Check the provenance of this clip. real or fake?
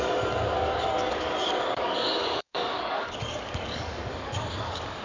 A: fake